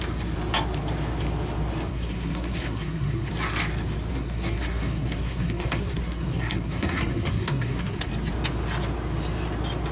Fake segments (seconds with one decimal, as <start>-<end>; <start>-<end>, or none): 1.9-3.3; 4.1-8.1